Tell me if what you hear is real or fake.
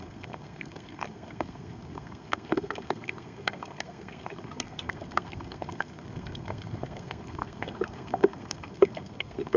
fake